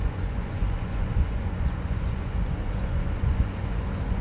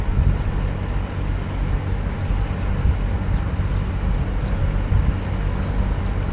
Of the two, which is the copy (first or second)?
first